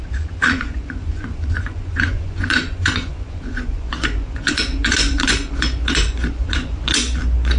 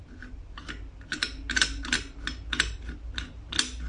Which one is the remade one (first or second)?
first